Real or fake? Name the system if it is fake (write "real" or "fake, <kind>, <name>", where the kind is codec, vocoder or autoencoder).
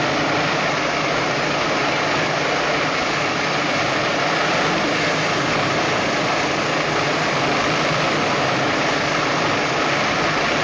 real